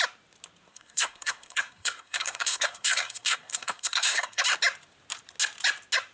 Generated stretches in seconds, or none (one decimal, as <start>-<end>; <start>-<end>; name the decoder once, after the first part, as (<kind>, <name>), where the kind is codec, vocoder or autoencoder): 0.7-4.4 (codec, SNAC)